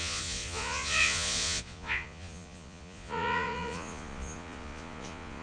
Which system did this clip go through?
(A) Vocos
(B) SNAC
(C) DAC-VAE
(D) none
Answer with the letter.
A